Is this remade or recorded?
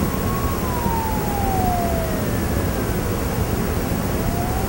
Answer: recorded